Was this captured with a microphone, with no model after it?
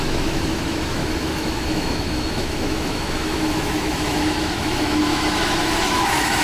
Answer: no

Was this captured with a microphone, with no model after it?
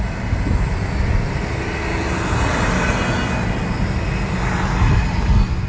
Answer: yes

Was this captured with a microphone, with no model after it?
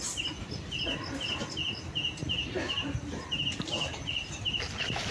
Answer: yes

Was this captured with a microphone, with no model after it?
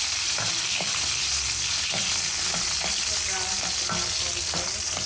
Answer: yes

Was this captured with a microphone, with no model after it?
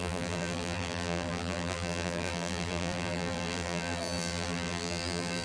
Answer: no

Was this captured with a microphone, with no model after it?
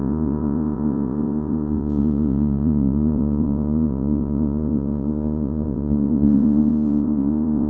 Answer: no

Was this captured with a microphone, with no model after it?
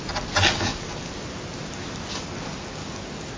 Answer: yes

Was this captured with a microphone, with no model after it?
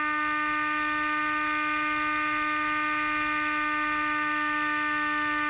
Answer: yes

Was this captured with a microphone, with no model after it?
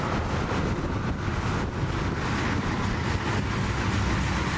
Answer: yes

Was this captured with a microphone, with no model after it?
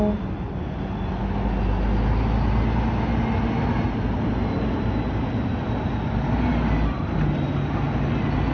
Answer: yes